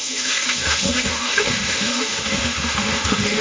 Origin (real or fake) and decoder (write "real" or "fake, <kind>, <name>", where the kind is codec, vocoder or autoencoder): fake, autoencoder, DAC-VAE